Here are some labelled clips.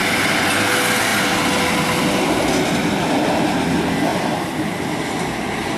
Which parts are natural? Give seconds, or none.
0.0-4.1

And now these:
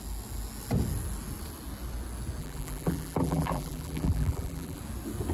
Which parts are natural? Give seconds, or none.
0.0-2.4; 4.8-5.3

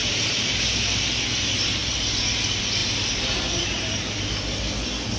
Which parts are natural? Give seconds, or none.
1.0-2.8; 4.3-5.2